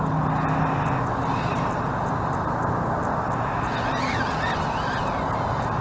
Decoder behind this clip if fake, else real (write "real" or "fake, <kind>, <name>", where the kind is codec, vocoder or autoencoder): real